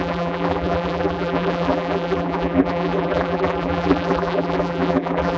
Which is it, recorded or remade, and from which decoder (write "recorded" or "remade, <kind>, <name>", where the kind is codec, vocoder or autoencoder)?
remade, vocoder, BigVGAN v2